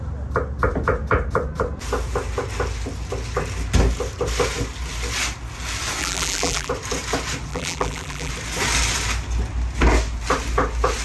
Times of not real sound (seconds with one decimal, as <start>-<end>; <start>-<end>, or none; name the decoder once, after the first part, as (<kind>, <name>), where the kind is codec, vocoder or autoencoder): 6.0-6.7 (vocoder, BigVGAN v2); 7.5-8.3